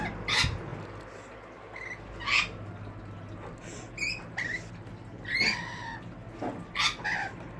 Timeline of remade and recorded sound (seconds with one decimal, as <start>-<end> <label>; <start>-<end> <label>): 0.0-7.6 recorded